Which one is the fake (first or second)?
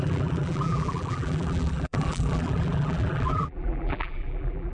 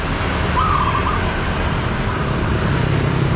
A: first